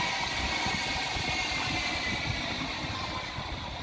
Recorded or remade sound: recorded